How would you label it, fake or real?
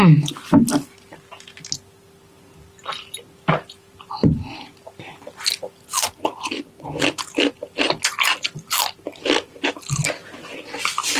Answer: real